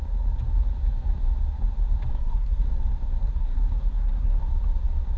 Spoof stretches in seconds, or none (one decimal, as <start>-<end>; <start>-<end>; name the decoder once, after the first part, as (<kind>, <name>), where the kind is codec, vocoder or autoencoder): 2.1-2.7 (codec, SNAC); 3.2-4.5